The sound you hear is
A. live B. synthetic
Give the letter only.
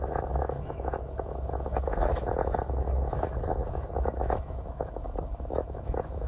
B